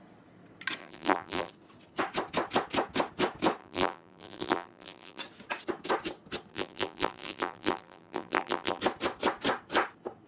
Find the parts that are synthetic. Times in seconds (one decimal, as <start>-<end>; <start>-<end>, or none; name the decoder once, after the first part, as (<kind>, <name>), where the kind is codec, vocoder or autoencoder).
0.8-1.5 (vocoder, BigVGAN v2); 3.6-5.2; 6.5-8.8